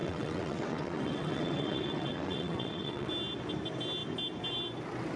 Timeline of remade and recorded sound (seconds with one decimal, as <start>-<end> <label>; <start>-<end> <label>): 0.0-3.1 remade; 3.1-5.2 recorded